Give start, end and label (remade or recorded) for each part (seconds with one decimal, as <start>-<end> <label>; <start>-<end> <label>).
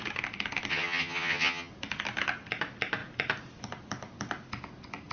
0.0-0.7 recorded; 0.7-1.7 remade; 1.7-5.1 recorded